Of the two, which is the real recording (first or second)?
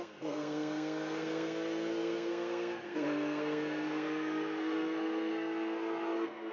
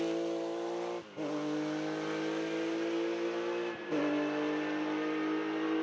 second